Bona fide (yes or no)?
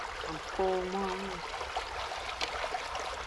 yes